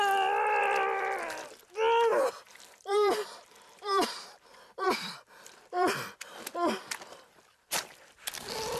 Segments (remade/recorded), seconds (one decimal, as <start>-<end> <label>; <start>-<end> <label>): 0.0-2.1 recorded; 2.1-6.3 remade; 6.3-8.8 recorded